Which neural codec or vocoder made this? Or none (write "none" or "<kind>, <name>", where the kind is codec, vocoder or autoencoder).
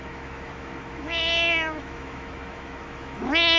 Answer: autoencoder, DAC-VAE